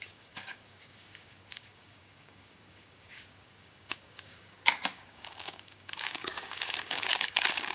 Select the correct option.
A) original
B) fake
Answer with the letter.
B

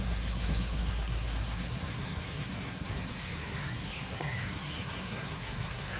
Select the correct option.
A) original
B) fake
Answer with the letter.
B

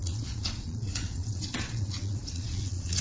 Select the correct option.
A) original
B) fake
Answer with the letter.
B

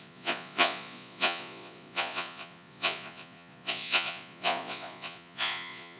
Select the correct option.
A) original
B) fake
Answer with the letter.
B